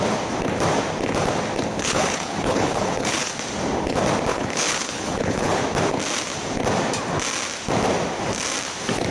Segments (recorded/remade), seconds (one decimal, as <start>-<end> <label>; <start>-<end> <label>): 0.0-1.7 recorded; 1.7-3.3 remade; 3.3-4.3 recorded; 4.3-5.6 remade; 5.6-9.1 recorded